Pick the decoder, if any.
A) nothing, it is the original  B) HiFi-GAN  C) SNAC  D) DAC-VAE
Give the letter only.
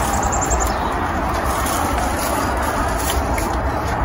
A